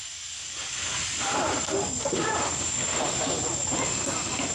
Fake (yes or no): no